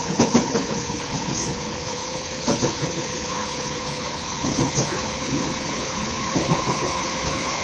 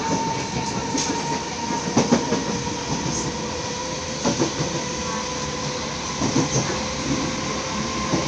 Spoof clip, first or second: first